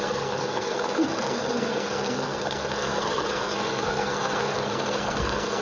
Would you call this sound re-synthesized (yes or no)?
yes